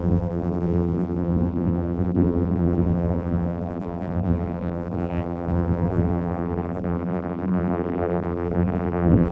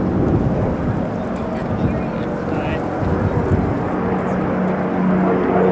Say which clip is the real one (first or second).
second